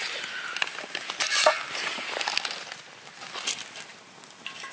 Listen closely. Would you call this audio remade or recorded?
recorded